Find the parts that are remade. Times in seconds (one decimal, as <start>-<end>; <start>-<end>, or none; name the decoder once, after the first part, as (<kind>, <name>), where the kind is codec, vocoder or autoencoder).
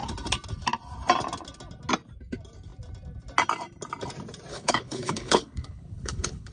4.5-6.5 (codec, HILCodec)